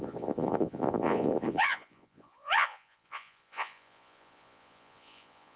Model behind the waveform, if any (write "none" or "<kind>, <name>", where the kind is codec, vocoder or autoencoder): vocoder, Vocos